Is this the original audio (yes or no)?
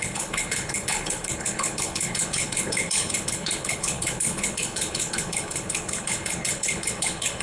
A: no